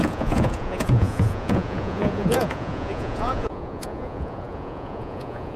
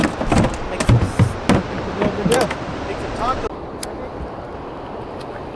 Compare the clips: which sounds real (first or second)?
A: second